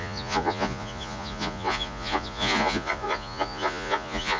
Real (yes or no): no